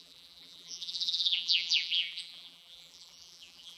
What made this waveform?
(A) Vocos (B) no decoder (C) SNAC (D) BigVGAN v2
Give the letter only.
D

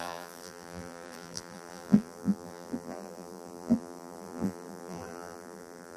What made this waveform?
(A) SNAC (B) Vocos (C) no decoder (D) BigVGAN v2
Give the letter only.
D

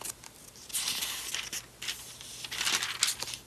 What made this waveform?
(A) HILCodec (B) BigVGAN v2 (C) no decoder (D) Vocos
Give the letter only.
C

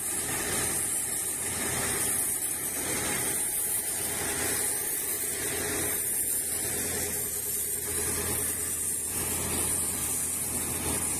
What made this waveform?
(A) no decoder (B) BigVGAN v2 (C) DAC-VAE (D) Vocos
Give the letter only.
A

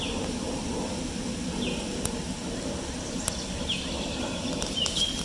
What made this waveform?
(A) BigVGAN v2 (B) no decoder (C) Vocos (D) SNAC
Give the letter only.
B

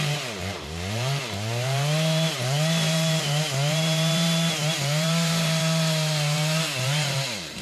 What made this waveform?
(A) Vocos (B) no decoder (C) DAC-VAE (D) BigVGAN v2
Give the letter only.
D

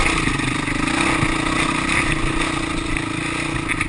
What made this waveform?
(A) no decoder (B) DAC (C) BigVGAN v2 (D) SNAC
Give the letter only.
A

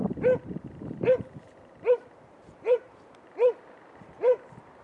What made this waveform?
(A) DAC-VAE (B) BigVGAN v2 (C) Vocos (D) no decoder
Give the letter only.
B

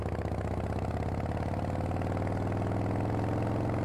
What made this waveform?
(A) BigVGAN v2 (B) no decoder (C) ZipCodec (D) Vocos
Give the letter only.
B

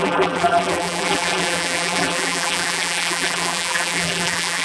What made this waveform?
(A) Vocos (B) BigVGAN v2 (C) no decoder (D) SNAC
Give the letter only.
B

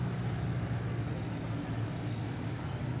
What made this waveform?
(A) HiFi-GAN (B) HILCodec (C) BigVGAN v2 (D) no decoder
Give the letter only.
D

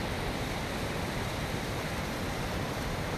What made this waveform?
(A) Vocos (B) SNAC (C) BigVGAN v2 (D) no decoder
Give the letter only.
C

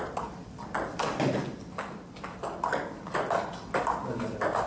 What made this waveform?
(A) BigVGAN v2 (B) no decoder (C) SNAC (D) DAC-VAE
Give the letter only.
B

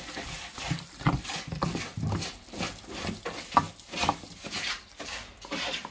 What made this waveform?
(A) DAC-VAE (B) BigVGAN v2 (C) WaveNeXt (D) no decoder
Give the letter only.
B